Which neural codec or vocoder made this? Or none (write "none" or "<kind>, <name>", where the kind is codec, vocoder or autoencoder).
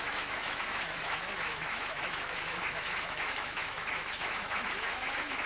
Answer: autoencoder, DAC-VAE